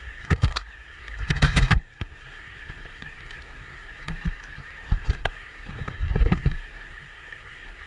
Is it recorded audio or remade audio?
remade